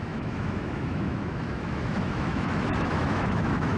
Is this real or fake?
fake